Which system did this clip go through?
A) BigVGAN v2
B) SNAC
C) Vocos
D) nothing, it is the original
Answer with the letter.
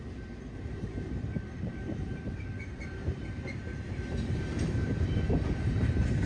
A